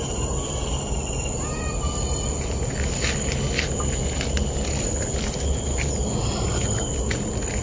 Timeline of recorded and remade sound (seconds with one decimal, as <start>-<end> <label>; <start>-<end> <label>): 0.0-7.6 recorded